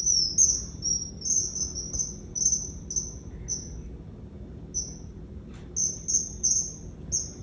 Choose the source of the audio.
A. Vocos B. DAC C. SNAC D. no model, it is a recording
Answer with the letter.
D